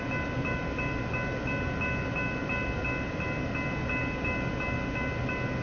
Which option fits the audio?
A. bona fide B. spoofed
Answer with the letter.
A